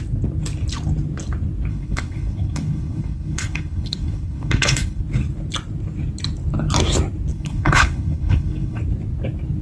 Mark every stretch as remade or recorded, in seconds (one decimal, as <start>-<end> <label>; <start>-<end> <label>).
0.0-1.7 recorded; 1.7-5.0 remade; 5.0-7.3 recorded; 7.3-8.8 remade; 8.8-9.6 recorded